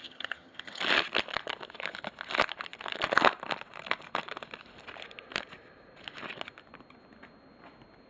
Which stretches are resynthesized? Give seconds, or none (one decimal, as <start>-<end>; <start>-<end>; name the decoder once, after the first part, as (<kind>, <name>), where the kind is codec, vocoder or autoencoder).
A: 0.0-0.8 (vocoder, HiFi-GAN)